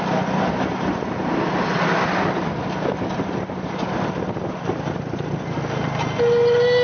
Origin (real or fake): real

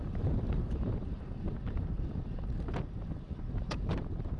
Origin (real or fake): fake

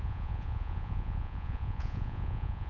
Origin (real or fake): fake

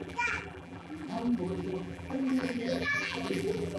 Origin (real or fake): fake